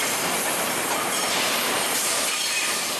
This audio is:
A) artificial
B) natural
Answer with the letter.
A